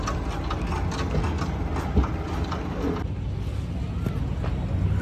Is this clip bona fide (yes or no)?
yes